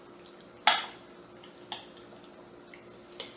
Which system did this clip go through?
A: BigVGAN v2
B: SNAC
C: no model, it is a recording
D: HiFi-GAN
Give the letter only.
C